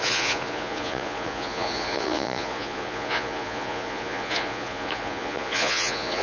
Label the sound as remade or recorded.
remade